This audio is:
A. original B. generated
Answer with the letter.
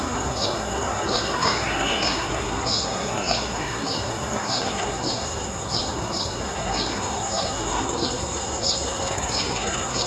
B